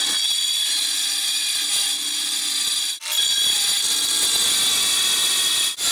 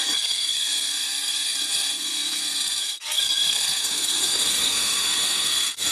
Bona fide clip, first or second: first